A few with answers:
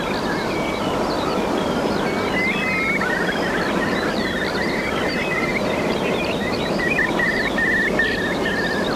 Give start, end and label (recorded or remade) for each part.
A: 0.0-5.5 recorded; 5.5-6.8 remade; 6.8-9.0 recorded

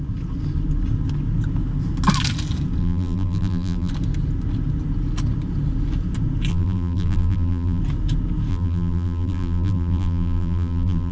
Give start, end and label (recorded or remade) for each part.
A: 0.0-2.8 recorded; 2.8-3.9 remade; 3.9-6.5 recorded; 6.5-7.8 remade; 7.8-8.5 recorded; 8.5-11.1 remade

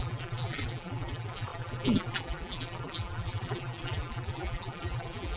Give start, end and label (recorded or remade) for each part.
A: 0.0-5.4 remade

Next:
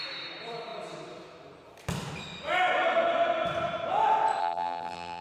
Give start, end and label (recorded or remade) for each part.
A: 0.0-4.4 recorded; 4.4-5.2 remade